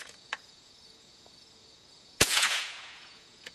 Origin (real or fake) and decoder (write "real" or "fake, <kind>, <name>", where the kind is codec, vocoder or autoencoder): fake, vocoder, Vocos